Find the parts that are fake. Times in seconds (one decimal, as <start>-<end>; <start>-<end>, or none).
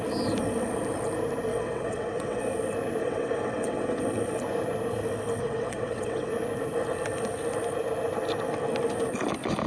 1.5-2.4; 3.0-4.0; 5.4-6.3